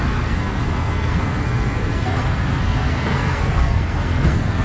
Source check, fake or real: fake